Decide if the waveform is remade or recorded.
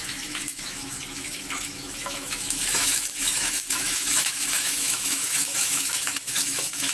remade